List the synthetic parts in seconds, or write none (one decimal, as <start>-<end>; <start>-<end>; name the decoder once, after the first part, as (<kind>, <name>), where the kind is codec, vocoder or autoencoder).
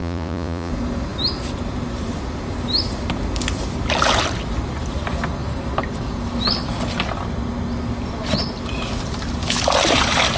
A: 0.0-0.7 (vocoder, Vocos)